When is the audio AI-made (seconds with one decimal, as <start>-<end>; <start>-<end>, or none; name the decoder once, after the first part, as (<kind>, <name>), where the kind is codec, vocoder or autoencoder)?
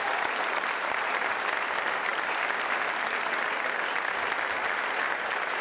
2.1-5.6 (vocoder, BigVGAN v2)